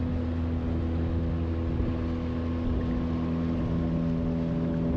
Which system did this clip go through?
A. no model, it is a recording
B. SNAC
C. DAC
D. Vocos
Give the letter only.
A